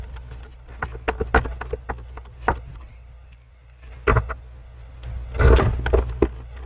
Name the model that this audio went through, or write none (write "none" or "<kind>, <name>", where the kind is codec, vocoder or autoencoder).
none